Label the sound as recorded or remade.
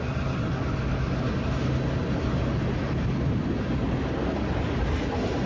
recorded